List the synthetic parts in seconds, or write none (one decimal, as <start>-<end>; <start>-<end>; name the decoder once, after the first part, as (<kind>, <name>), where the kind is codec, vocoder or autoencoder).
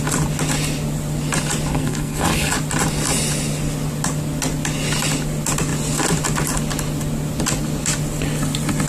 1.7-2.5 (codec, SNAC)